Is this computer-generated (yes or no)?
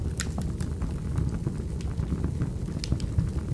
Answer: no